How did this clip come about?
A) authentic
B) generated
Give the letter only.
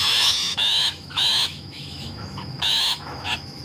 B